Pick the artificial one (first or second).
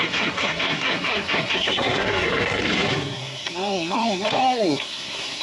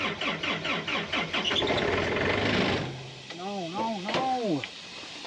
first